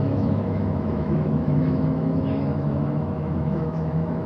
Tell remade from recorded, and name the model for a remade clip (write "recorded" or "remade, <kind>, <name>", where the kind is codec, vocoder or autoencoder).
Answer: remade, autoencoder, DAC-VAE